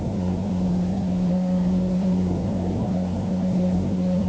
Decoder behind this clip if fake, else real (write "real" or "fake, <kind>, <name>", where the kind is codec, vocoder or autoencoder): fake, codec, SNAC